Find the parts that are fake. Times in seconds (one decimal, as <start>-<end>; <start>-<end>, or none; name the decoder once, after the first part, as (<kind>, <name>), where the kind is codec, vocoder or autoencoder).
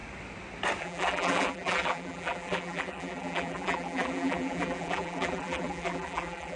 0.8-6.6 (vocoder, BigVGAN v2)